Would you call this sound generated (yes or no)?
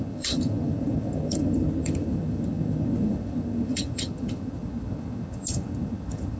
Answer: yes